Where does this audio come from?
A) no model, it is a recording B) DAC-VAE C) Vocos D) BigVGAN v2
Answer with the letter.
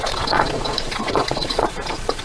C